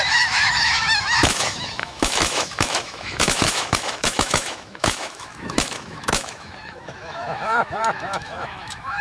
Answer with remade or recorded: remade